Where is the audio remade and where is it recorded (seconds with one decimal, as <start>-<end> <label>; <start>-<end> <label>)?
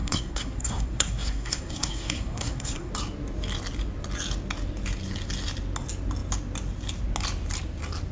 0.0-2.9 remade; 2.9-8.1 recorded